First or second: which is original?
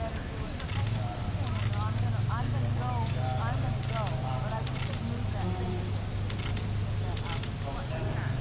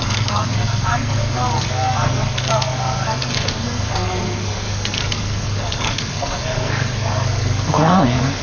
first